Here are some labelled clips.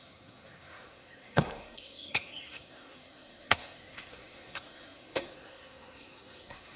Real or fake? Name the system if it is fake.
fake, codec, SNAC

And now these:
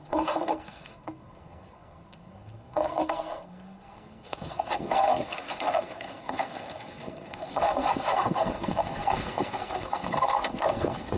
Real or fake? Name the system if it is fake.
fake, codec, SNAC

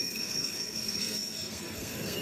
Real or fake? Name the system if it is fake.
fake, codec, SNAC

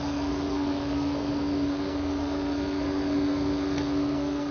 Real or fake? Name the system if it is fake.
fake, codec, SNAC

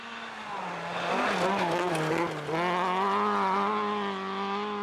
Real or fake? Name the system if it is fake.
real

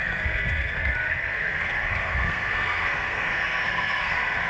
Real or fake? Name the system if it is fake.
fake, codec, SNAC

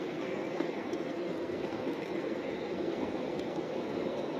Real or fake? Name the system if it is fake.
fake, codec, SNAC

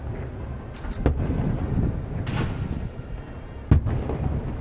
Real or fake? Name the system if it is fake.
real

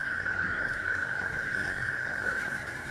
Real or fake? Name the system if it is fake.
fake, codec, SNAC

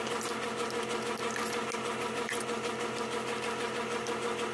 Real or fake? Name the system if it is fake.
real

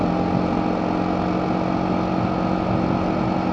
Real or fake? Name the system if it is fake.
real